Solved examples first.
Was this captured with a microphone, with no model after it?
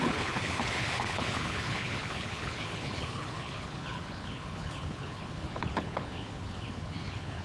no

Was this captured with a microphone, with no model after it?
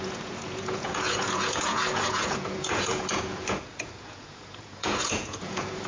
no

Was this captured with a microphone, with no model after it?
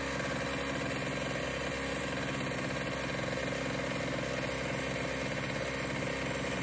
yes